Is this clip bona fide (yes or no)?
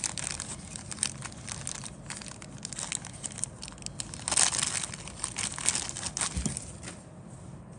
yes